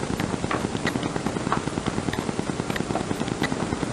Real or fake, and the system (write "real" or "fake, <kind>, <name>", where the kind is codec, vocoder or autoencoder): real